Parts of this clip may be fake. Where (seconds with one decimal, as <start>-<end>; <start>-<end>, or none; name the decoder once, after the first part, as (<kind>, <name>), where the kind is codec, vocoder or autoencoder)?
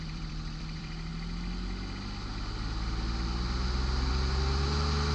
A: 0.0-1.1 (vocoder, BigVGAN v2); 4.1-5.1